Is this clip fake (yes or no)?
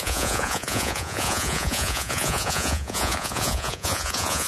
yes